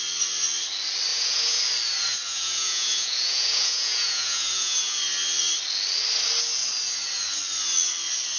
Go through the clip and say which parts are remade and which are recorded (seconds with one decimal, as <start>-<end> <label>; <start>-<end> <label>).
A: 0.0-1.1 recorded; 1.1-1.6 remade; 1.6-2.3 recorded; 2.3-5.0 remade; 5.0-8.4 recorded

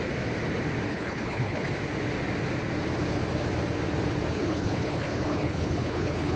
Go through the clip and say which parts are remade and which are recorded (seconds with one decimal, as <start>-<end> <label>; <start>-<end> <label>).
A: 0.0-0.9 recorded; 0.9-1.7 remade; 1.7-4.3 recorded; 4.3-6.4 remade

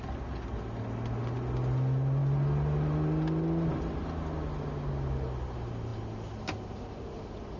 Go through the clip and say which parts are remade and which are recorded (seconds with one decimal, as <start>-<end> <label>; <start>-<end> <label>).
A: 0.0-7.6 recorded